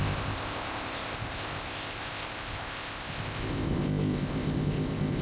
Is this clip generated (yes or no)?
yes